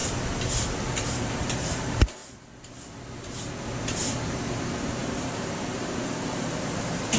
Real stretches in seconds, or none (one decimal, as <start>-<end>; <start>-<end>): 0.0-0.9; 2.2-3.8